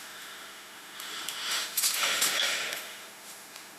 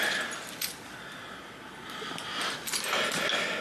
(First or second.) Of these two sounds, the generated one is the first